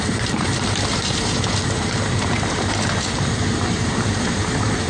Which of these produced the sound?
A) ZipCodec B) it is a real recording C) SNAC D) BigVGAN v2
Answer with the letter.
D